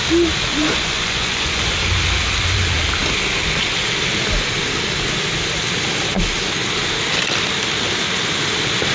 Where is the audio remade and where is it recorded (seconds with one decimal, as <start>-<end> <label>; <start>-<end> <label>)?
0.0-0.5 recorded; 0.5-1.7 remade; 1.7-8.9 recorded